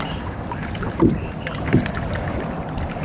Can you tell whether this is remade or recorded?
remade